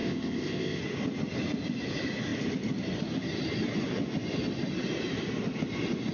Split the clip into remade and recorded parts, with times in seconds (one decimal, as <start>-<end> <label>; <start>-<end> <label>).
0.0-0.8 remade; 0.8-6.1 recorded